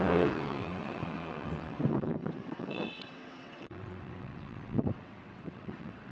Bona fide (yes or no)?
no